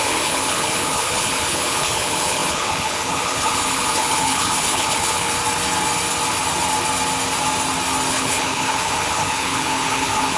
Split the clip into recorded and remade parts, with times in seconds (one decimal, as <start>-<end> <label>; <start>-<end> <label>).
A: 0.0-5.4 remade; 5.4-8.1 recorded; 8.1-10.4 remade